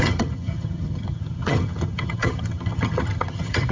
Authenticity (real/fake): fake